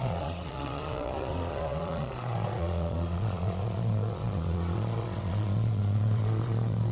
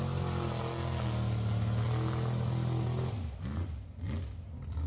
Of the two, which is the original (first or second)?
second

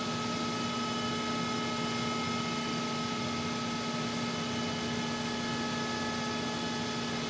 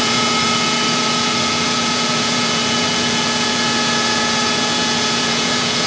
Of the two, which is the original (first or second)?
first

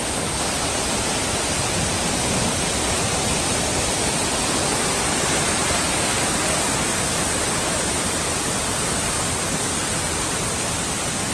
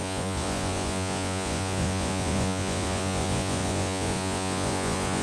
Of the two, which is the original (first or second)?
first